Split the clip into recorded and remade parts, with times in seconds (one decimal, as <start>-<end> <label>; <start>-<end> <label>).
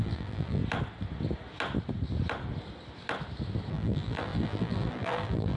0.0-0.6 remade; 0.6-3.7 recorded; 3.7-5.6 remade